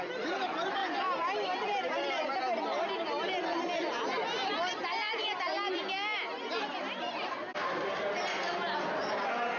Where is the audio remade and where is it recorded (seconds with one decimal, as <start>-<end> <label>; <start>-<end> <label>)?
0.0-9.6 recorded